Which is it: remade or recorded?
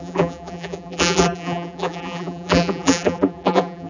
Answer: remade